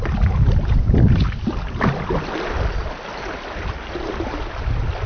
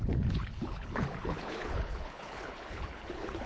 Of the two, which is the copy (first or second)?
second